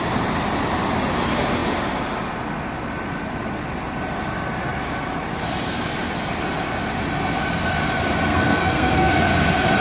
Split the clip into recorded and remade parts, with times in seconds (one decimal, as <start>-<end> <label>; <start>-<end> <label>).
0.0-8.3 recorded; 8.3-9.1 remade; 9.1-9.8 recorded